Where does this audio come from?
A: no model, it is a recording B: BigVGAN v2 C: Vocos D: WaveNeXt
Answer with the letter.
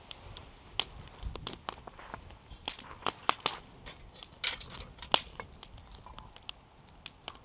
A